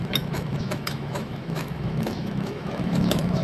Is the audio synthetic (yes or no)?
yes